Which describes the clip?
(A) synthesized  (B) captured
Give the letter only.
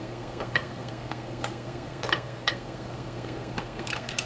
A